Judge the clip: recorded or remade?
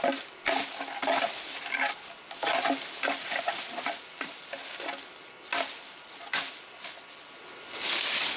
recorded